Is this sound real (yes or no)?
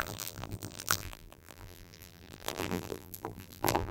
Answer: no